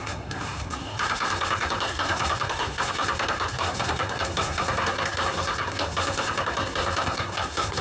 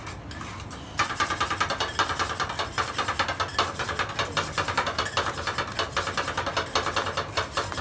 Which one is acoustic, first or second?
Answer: second